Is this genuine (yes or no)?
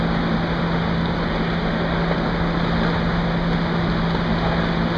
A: yes